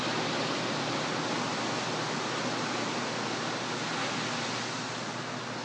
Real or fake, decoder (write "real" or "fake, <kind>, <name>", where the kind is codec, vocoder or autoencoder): real